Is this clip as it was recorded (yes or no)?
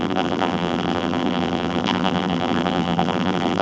no